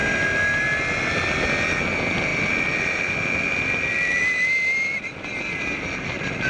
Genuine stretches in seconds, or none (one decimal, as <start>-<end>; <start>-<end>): 0.0-2.3; 5.3-6.5